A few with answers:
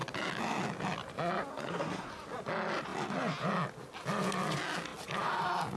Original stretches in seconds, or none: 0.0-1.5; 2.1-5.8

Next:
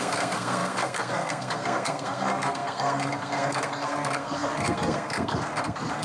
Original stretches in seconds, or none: none

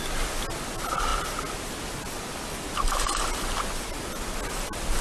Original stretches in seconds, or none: 0.0-5.0

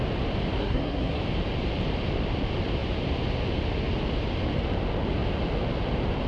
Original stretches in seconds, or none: 0.0-0.6; 1.2-6.3

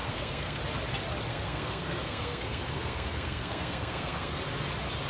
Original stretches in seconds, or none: 0.6-1.3; 4.4-5.1